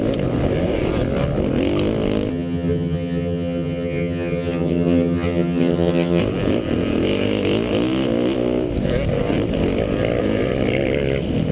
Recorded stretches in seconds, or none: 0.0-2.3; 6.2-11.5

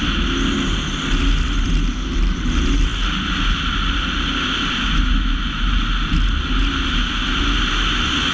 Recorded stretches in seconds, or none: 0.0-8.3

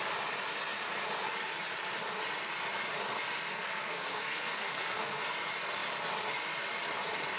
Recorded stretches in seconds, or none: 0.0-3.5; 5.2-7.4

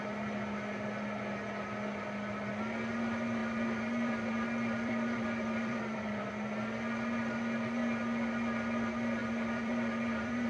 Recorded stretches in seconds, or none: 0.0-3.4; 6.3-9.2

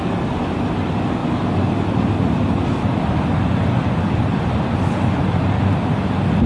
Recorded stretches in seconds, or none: 0.0-6.5

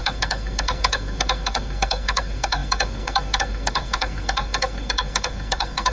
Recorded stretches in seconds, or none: none

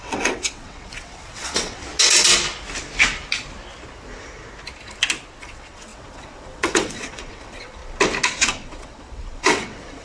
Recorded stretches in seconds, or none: 1.8-5.4; 7.8-8.4

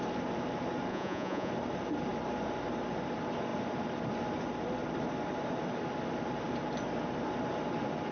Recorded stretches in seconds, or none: 0.0-0.9; 1.5-8.1